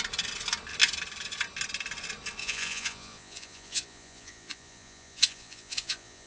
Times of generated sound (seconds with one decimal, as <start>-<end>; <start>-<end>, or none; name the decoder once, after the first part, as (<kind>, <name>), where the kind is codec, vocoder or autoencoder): 2.4-6.3 (vocoder, Vocos)